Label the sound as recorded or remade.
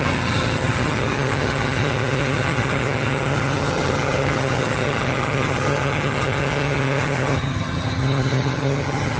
remade